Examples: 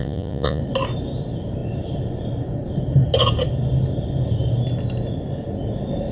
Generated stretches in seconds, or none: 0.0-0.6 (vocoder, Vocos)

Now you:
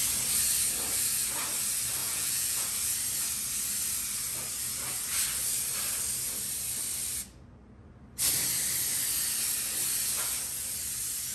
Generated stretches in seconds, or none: 2.0-2.7 (vocoder, Vocos)

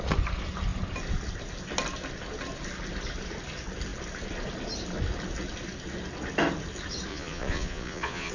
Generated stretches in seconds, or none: 7.1-8.3 (vocoder, Vocos)

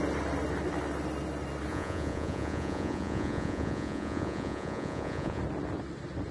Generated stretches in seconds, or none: 1.7-5.4 (vocoder, Vocos)

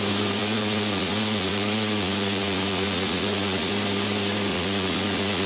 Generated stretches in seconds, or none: 0.4-3.7 (vocoder, Vocos); 4.5-5.5

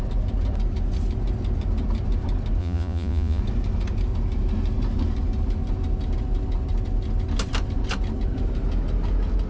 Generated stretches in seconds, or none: 2.6-3.4 (vocoder, Vocos)

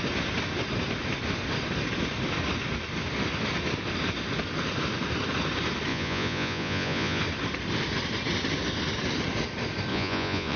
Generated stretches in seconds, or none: 5.9-7.2 (vocoder, Vocos); 9.9-10.6

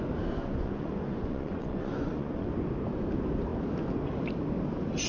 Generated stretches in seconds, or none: 0.4-2.5 (vocoder, Vocos)